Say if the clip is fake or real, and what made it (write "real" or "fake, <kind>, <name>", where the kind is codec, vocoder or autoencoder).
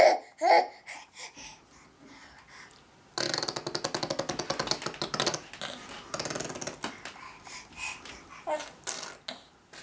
real